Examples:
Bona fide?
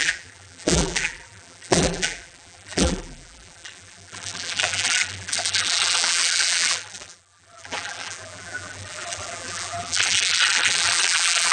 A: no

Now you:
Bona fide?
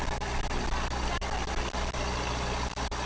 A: yes